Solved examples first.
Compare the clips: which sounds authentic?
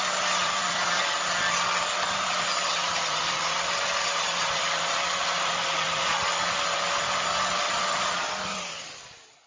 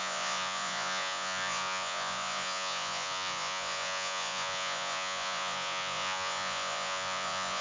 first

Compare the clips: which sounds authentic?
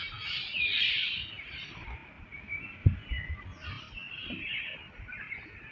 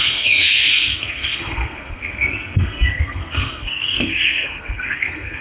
first